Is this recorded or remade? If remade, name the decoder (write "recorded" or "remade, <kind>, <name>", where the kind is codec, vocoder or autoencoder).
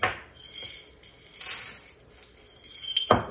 recorded